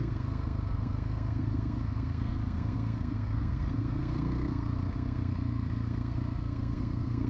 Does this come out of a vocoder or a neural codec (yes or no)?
yes